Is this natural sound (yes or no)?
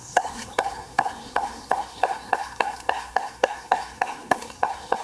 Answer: no